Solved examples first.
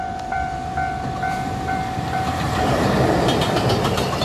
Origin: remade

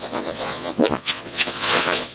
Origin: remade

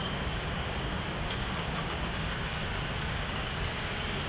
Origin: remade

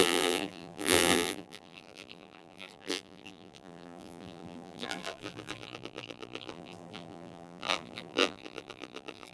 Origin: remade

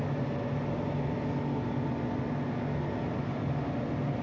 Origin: recorded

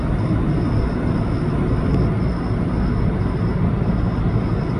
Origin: recorded